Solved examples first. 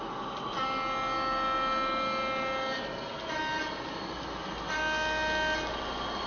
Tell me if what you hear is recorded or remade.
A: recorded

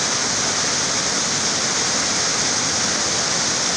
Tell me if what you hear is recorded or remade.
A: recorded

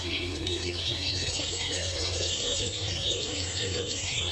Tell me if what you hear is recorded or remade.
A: remade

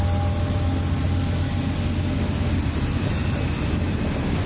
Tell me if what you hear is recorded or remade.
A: recorded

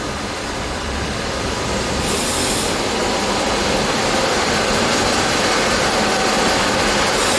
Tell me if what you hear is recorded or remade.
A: remade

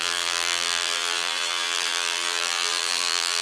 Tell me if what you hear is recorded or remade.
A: remade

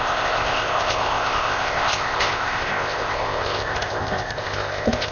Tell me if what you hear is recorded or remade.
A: remade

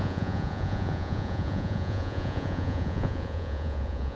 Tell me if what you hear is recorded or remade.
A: remade